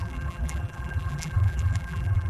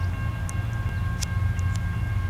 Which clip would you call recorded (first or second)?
second